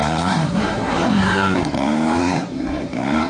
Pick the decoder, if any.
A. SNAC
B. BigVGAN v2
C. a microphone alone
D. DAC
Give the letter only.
A